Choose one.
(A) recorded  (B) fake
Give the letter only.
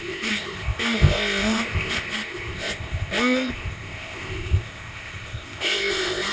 B